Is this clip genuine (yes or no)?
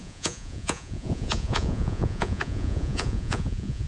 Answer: no